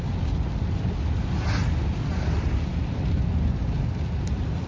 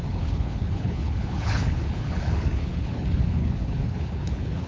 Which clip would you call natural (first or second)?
first